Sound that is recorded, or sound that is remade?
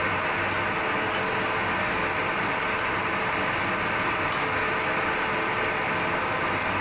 recorded